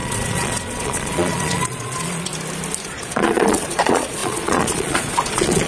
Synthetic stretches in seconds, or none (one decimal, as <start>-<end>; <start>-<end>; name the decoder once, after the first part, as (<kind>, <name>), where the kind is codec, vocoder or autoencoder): 0.0-2.3 (vocoder, Vocos); 2.8-5.7